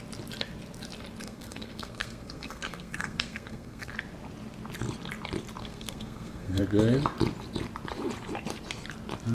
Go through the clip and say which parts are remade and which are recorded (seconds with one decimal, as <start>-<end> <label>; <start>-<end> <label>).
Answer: 0.0-1.2 recorded; 1.2-3.9 remade; 3.9-5.6 recorded; 5.6-6.6 remade; 6.6-9.3 recorded